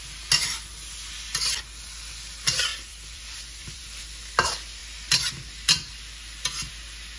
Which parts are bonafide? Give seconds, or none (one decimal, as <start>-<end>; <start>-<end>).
0.0-2.7; 3.8-7.2